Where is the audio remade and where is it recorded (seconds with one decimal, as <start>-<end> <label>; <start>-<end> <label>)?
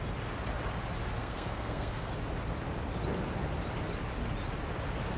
0.0-1.2 recorded; 1.2-2.1 remade; 2.1-5.2 recorded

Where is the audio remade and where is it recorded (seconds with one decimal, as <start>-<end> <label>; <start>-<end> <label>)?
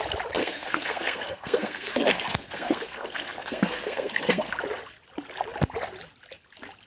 0.0-0.4 recorded; 0.4-4.5 remade; 4.5-6.9 recorded